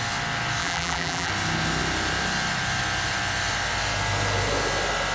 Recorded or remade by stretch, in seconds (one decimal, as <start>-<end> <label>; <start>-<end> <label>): 0.0-0.6 recorded; 0.6-1.3 remade; 1.3-5.1 recorded